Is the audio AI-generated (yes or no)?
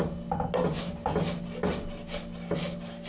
no